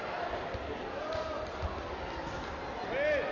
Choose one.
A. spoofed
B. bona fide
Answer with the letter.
B